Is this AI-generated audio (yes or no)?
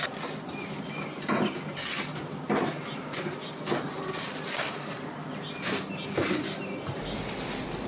no